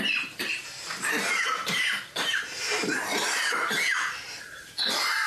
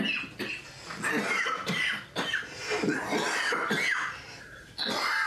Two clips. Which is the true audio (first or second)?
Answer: second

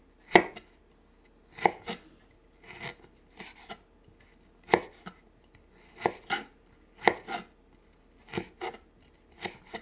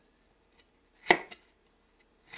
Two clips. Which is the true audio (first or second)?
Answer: first